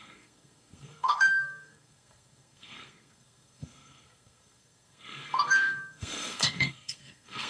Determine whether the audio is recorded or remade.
remade